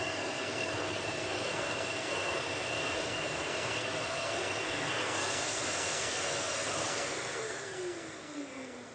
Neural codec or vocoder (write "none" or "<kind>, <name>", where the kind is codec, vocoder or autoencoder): codec, SNAC